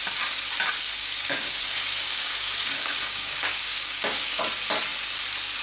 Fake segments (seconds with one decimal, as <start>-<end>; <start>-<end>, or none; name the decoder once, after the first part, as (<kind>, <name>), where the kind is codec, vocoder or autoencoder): 1.0-4.4 (codec, DAC)